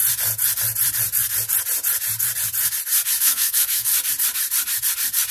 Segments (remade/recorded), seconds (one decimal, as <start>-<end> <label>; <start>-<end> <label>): 0.0-3.2 recorded; 3.2-3.9 remade; 3.9-5.3 recorded